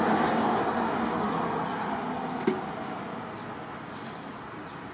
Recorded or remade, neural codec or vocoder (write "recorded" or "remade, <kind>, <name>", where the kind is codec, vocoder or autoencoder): recorded